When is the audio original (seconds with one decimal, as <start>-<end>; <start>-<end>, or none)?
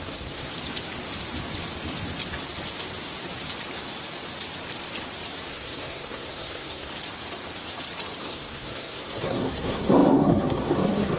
0.5-5.5; 6.9-8.2